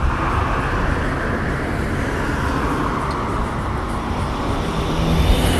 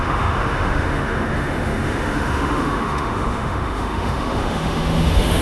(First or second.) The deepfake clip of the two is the second